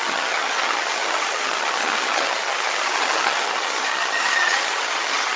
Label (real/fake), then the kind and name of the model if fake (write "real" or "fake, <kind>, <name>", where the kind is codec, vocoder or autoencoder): fake, vocoder, HiFi-GAN